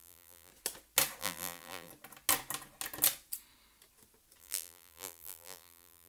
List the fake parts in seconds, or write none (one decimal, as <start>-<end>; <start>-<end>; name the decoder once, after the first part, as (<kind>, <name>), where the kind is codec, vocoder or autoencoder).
0.0-0.5 (vocoder, BigVGAN v2); 1.2-1.9; 4.4-6.1